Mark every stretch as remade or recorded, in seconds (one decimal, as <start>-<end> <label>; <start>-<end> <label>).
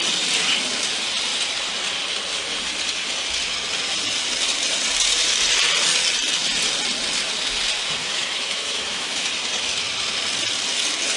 0.0-8.0 recorded; 8.0-9.3 remade; 9.3-11.2 recorded